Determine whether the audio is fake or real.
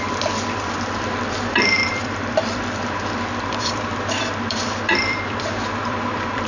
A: fake